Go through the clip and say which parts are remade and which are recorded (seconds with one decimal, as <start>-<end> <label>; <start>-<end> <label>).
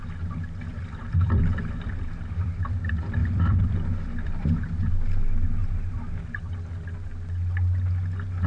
0.0-0.7 recorded; 0.7-2.8 remade; 2.8-3.2 recorded; 3.2-4.9 remade; 4.9-5.6 recorded; 5.6-6.9 remade; 6.9-8.5 recorded